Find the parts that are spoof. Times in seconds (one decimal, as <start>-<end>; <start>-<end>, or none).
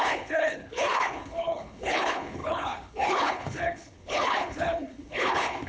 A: 0.0-5.7